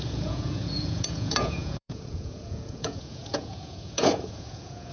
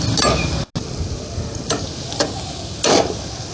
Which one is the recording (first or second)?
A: second